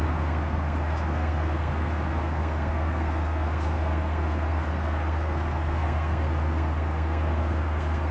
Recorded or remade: remade